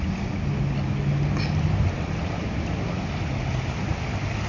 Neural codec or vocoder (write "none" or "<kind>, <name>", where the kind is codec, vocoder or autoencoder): none